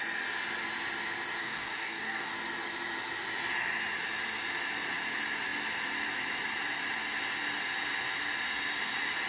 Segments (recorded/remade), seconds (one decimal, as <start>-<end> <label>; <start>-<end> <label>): 0.0-1.4 recorded; 1.4-2.3 remade; 2.3-9.3 recorded